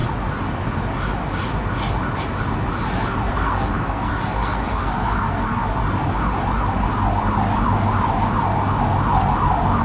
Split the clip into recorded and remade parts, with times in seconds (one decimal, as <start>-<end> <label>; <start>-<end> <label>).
0.0-3.3 recorded; 3.3-5.8 remade; 5.8-9.8 recorded